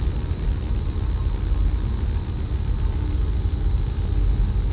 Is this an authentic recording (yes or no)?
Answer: yes